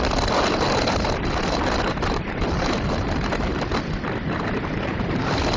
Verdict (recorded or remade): remade